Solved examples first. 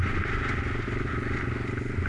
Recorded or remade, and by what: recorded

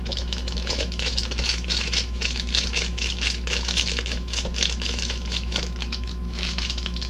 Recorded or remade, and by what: remade, autoencoder, DAC-VAE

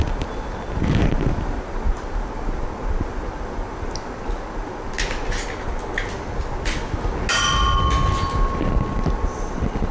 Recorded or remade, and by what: recorded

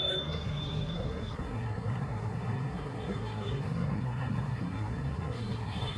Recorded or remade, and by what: remade, codec, SNAC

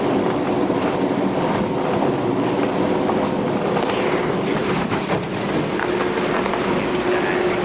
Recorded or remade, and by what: recorded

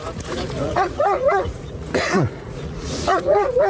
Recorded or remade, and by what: remade, vocoder, Vocos